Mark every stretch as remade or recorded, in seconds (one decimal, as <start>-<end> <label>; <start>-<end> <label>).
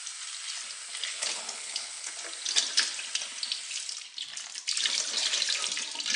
0.0-1.1 recorded; 1.1-2.1 remade; 2.1-6.2 recorded